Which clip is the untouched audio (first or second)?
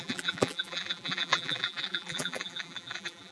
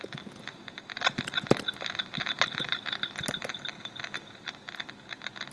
second